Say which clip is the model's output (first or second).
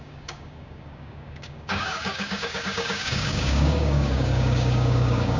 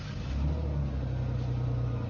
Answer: first